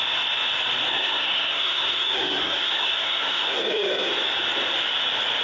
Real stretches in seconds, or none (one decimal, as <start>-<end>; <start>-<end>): 0.0-0.9; 4.1-5.4